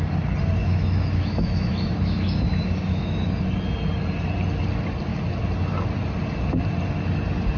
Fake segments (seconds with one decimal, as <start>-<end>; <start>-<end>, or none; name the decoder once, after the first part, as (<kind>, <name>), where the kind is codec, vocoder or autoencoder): 0.6-3.4 (autoencoder, DAC-VAE)